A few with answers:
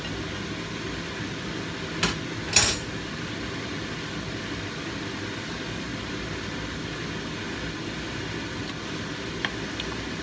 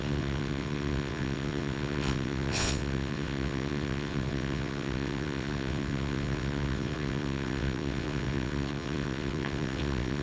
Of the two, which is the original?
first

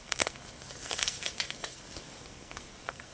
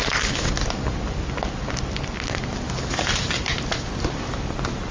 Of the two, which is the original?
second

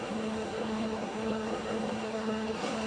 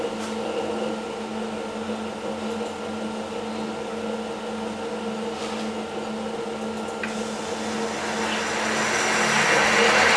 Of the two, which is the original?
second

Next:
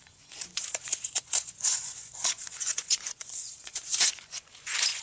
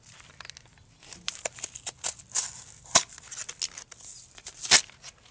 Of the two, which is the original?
second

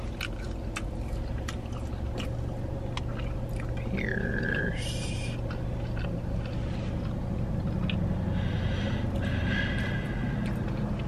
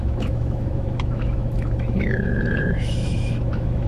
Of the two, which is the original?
first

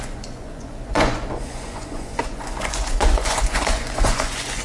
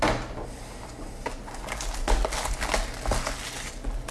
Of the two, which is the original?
second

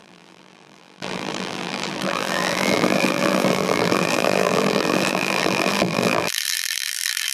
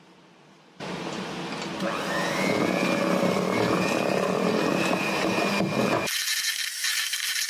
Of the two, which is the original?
second